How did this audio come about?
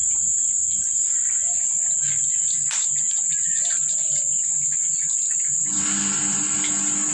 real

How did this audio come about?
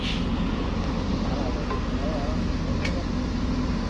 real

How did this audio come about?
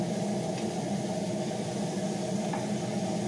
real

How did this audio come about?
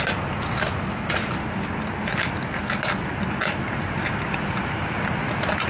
real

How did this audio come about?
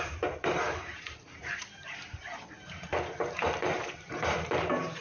fake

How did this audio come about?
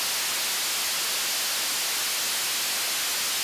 real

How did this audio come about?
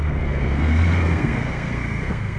fake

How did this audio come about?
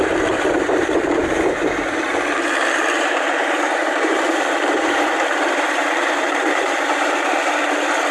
fake